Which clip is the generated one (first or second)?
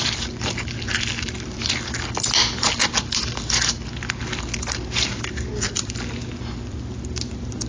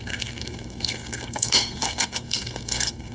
second